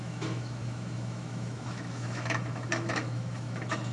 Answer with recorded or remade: remade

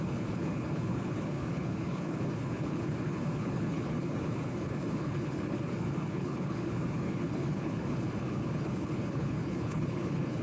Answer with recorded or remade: remade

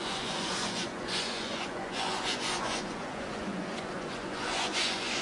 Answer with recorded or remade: remade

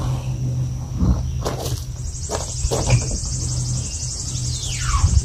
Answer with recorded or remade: recorded